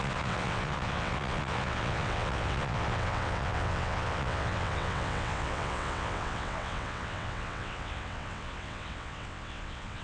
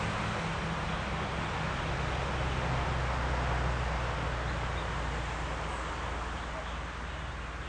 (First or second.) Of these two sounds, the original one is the second